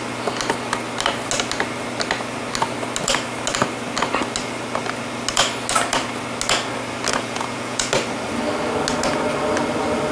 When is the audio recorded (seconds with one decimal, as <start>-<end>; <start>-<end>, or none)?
0.0-7.1; 7.9-10.1